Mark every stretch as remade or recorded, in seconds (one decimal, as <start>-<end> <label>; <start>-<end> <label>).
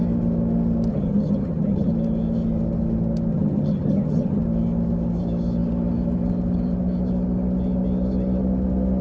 0.0-0.9 recorded; 0.9-1.9 remade; 1.9-3.3 recorded; 3.3-4.4 remade; 4.4-9.0 recorded